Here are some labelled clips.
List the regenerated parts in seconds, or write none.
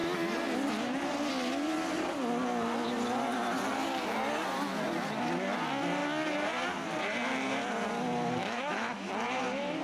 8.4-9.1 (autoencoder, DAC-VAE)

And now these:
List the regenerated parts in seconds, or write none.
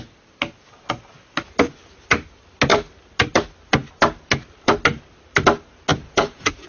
5.9-6.7 (vocoder, Vocos)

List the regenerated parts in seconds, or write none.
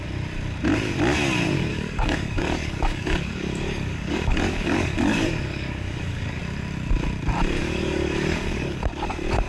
1.7-6.4 (codec, DAC); 7.6-8.9